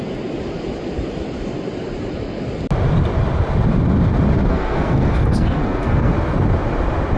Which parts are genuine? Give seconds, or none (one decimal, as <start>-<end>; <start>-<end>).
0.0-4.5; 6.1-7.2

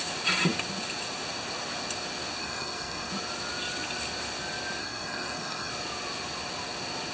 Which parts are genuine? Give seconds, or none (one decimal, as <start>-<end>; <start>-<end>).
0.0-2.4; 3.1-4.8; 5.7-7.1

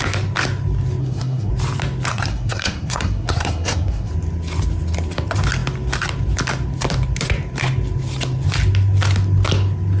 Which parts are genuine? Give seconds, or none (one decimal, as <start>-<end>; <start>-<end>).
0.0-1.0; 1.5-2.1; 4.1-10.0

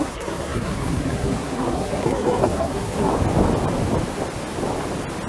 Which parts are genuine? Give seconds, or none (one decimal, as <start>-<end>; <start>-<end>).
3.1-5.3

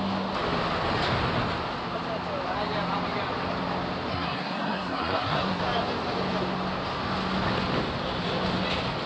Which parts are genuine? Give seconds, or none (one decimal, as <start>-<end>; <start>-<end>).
0.0-4.1; 5.6-9.1

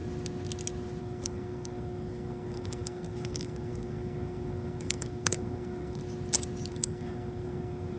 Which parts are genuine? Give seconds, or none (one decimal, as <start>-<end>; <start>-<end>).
0.0-1.0; 6.0-6.7

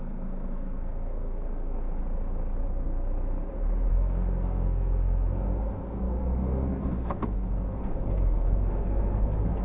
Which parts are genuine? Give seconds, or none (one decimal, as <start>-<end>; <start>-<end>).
2.0-3.9